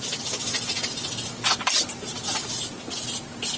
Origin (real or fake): real